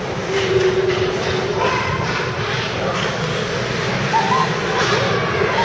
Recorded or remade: recorded